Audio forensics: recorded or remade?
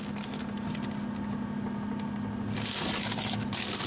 recorded